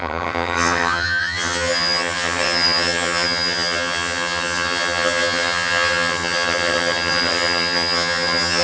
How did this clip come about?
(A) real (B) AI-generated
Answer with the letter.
B